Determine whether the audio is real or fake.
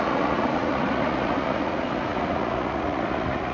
fake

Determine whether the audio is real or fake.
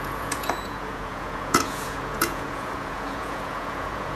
fake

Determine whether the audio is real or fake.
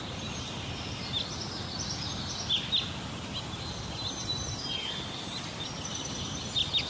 real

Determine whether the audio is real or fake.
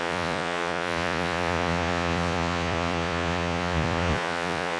fake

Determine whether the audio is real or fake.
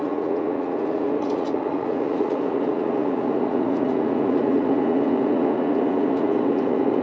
fake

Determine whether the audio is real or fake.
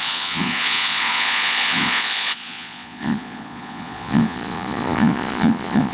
fake